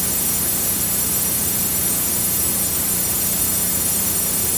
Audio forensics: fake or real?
fake